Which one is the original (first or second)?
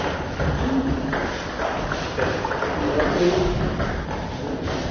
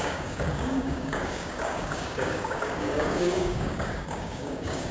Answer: first